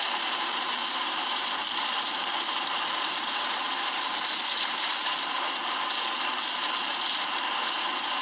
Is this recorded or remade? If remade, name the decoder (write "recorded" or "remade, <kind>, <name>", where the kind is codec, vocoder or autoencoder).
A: remade, vocoder, BigVGAN v2